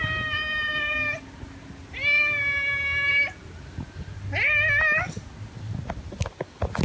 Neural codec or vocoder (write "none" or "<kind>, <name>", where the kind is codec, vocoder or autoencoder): none